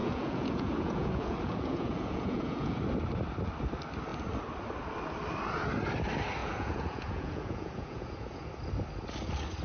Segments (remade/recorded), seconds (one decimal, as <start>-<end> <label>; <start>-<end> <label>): 0.0-2.8 remade; 2.8-6.4 recorded; 6.4-8.5 remade; 8.5-9.6 recorded